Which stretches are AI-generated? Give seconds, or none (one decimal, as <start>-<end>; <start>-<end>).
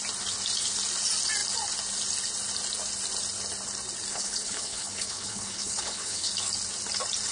4.1-6.3